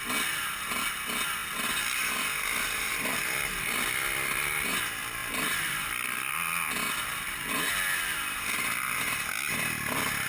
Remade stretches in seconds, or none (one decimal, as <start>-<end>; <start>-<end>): 5.2-6.3